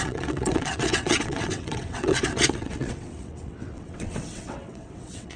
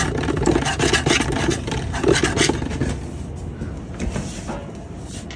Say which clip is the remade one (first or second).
first